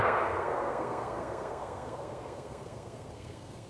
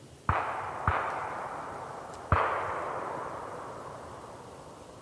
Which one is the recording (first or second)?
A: second